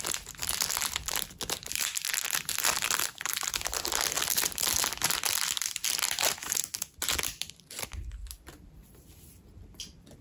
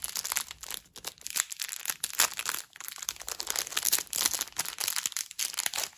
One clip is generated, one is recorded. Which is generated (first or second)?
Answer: first